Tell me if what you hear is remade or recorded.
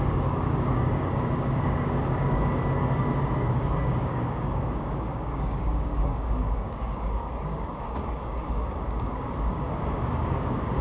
remade